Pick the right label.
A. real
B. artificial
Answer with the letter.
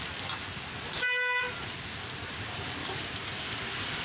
A